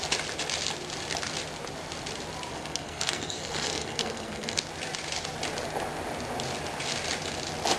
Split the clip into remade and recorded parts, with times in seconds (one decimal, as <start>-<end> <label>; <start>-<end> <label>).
0.0-2.5 recorded; 2.5-4.6 remade; 4.6-7.8 recorded